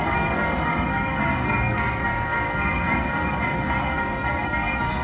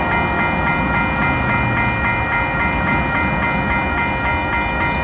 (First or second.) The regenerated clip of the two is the first